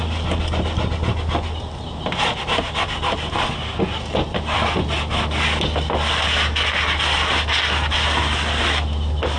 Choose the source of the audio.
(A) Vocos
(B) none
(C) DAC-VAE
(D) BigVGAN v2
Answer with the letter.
B